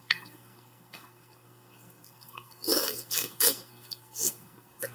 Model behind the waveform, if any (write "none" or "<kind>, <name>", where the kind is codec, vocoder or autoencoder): codec, SNAC